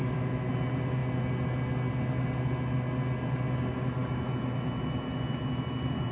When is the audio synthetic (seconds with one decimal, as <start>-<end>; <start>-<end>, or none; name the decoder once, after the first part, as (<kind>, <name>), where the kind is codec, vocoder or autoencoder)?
0.0-0.5 (autoencoder, DAC-VAE)